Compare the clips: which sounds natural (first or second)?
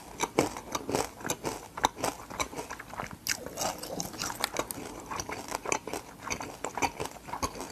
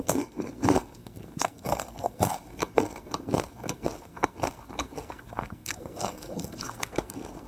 first